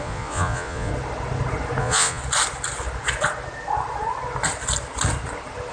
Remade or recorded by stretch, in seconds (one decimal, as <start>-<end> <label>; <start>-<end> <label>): 0.0-0.9 remade; 0.9-1.8 recorded; 1.8-2.2 remade; 2.2-5.7 recorded

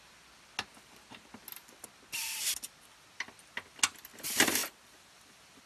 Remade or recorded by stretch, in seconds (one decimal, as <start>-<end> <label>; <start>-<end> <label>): 0.0-5.7 recorded

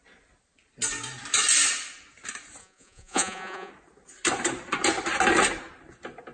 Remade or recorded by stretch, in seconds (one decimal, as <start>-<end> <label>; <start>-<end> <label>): 0.0-2.6 recorded; 2.6-3.7 remade; 3.7-6.3 recorded

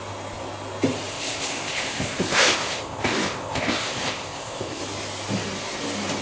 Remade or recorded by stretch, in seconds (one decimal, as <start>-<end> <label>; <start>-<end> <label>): 0.0-1.1 recorded; 1.1-4.8 remade; 4.8-6.2 recorded

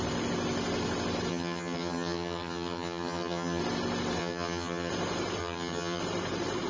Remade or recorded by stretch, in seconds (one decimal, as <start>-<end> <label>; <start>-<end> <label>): 0.0-1.3 recorded; 1.3-3.6 remade; 3.6-4.2 recorded; 4.2-4.9 remade; 4.9-5.4 recorded; 5.4-6.0 remade; 6.0-6.7 recorded

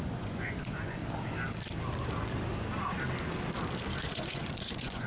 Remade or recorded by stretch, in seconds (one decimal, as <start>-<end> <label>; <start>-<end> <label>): 0.0-1.0 remade; 1.0-4.1 recorded; 4.1-5.1 remade